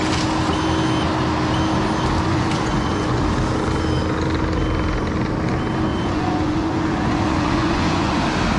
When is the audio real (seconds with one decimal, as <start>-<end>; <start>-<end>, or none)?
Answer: 0.0-2.3; 3.2-5.9; 8.2-8.6